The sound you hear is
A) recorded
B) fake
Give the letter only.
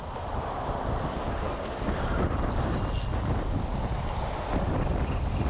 A